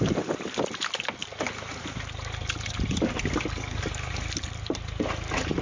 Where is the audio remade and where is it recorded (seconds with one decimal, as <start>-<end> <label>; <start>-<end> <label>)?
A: 0.0-5.6 recorded